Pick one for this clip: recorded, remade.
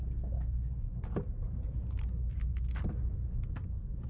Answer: recorded